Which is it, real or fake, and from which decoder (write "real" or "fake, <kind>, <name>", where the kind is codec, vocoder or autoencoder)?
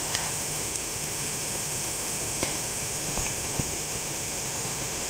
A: fake, autoencoder, DAC-VAE